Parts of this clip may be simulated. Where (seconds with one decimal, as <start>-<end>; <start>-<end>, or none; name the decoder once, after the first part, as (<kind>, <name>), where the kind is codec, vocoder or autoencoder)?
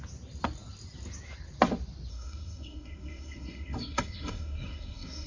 2.1-5.3 (codec, SNAC)